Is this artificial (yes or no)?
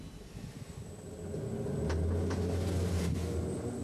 no